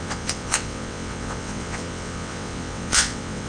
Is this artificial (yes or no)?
yes